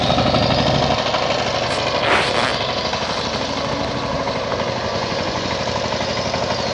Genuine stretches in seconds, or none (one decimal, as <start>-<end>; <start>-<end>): 0.0-4.9; 5.5-6.7

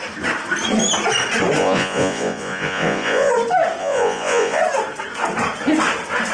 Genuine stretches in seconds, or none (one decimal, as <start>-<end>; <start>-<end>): 0.0-1.6; 3.3-3.8; 4.6-6.3

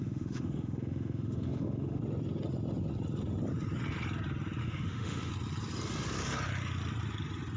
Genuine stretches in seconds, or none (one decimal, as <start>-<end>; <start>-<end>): 2.0-4.6; 5.3-7.6

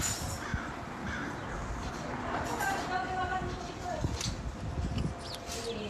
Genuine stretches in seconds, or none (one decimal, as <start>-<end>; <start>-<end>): 0.0-5.9

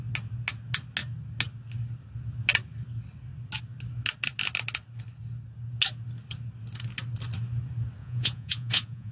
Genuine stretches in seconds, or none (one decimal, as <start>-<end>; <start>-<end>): 0.0-8.0

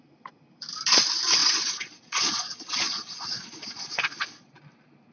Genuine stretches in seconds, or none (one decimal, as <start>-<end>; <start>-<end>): 0.0-1.4; 4.5-5.1

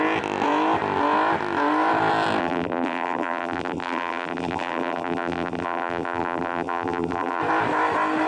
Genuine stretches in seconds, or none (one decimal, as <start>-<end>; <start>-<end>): 0.0-2.4; 7.4-8.3

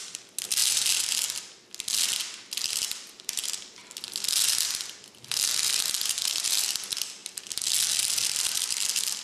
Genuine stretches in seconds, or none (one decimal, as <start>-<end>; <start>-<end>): 0.0-9.2